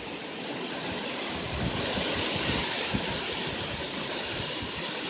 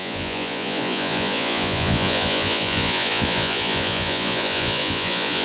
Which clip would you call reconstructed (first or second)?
second